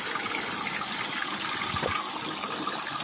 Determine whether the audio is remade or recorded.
recorded